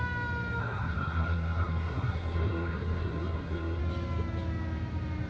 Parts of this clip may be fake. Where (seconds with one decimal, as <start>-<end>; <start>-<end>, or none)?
0.6-3.8